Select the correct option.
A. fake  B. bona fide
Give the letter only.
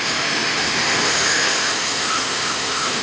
A